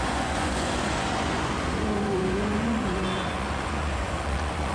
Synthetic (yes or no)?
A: yes